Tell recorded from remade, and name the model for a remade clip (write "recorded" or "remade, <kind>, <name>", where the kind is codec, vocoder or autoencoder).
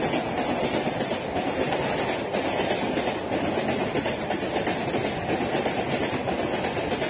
recorded